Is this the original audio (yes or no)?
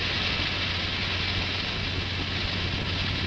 yes